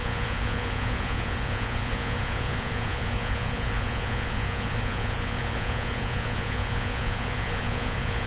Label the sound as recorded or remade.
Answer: remade